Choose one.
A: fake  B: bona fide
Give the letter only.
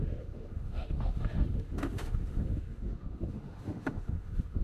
A